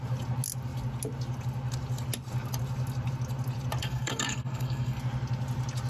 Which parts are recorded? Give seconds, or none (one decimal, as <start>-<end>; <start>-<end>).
0.0-3.8; 5.0-5.9